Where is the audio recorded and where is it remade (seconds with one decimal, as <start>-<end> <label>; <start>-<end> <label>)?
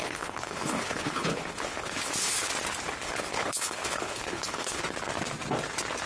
0.0-2.5 remade; 2.5-3.0 recorded; 3.0-4.8 remade; 4.8-6.1 recorded